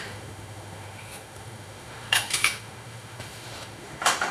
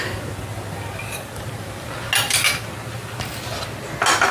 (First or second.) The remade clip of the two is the first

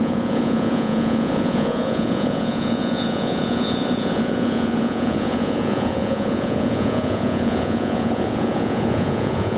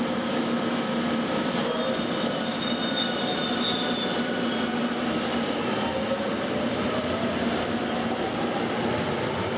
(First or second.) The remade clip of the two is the first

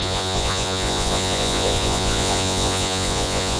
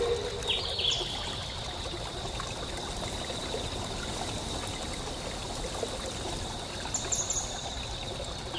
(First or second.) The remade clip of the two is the first